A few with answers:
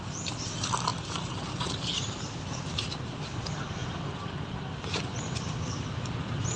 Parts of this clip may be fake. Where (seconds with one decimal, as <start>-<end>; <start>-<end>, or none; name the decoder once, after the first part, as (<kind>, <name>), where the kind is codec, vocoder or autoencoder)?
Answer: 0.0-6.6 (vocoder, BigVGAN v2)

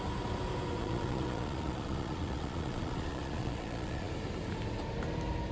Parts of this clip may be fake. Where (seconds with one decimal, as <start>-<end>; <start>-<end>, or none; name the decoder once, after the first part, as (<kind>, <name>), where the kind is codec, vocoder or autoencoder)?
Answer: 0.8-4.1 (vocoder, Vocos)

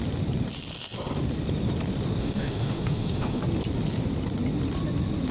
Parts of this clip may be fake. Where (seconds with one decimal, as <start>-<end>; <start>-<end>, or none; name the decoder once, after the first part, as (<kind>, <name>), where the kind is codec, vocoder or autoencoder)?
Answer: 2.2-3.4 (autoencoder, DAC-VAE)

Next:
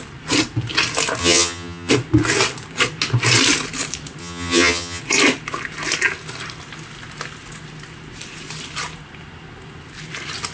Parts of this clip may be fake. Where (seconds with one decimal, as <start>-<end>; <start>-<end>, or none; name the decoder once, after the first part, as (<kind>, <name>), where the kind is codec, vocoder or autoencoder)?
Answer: 1.2-1.9 (vocoder, HiFi-GAN); 4.2-5.0

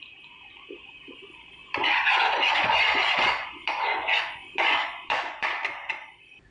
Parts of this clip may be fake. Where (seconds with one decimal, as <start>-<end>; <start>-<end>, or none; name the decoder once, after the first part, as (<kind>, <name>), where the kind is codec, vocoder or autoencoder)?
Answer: 1.6-5.5 (vocoder, Vocos)